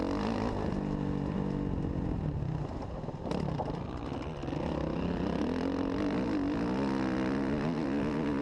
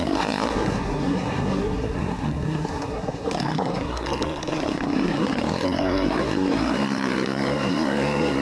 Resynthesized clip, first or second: second